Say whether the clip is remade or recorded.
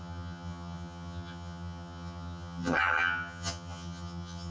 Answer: remade